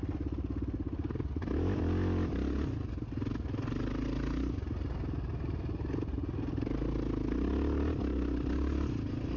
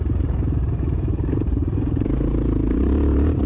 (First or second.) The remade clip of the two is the second